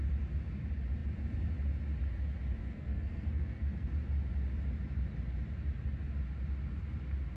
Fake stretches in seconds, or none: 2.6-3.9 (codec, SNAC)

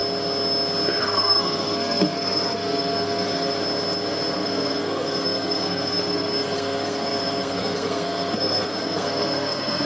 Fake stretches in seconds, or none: 1.0-3.5 (codec, SNAC); 4.3-9.9

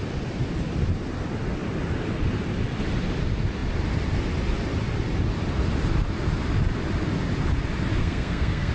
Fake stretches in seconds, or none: 8.0-8.7 (codec, SNAC)

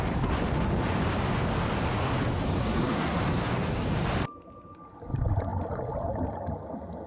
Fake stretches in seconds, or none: 2.6-3.2 (codec, SNAC)

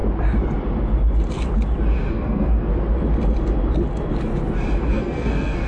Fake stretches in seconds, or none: 2.1-2.7 (codec, SNAC); 4.9-5.7

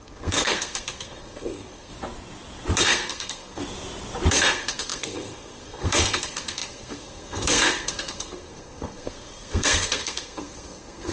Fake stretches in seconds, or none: 0.0-1.9 (codec, SNAC); 2.8-3.6; 4.3-11.1

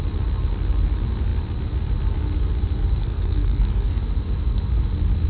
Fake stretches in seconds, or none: 3.0-4.0 (codec, SNAC)

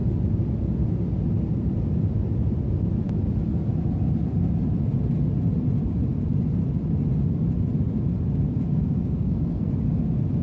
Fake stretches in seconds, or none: 8.7-9.7 (codec, SNAC)